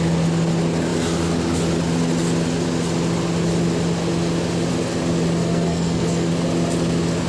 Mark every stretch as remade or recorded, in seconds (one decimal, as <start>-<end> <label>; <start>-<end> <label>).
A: 0.0-5.4 recorded; 5.4-6.3 remade; 6.3-7.3 recorded